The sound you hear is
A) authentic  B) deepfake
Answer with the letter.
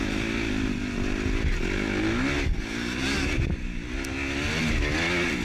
A